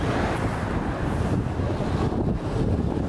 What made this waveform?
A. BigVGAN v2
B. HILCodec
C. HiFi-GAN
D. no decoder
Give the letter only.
D